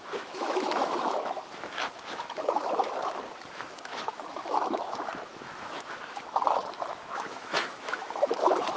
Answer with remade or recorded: remade